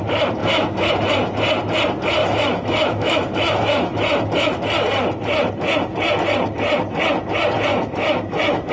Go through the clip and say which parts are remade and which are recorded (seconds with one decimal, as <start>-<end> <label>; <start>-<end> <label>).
0.0-0.4 recorded; 0.4-0.9 remade; 0.9-2.2 recorded; 2.2-4.6 remade; 4.6-7.7 recorded; 7.7-8.7 remade